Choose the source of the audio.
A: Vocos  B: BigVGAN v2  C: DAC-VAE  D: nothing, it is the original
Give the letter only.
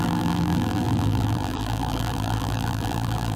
B